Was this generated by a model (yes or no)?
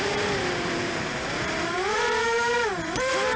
yes